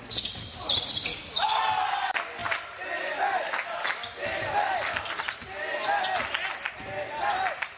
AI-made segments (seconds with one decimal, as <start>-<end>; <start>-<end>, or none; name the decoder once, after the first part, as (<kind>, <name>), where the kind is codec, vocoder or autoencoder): 1.1-1.6 (codec, DAC)